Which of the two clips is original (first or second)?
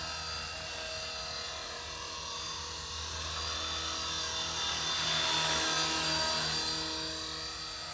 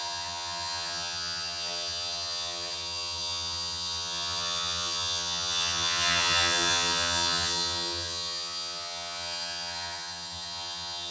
first